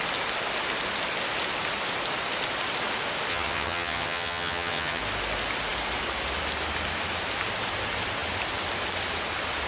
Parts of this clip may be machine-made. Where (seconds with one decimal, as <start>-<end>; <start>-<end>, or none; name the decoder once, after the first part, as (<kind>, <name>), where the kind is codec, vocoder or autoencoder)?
3.3-5.0 (vocoder, HiFi-GAN)